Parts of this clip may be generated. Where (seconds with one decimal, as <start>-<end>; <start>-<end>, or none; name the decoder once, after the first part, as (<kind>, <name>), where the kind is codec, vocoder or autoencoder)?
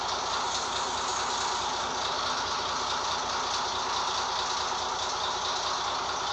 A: none